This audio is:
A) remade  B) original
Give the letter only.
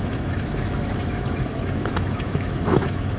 A